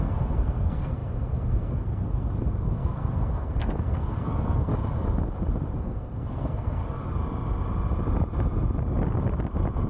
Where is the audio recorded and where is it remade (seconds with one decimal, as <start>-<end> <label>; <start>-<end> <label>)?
0.0-4.7 remade; 4.7-5.8 recorded; 5.8-6.8 remade; 6.8-9.9 recorded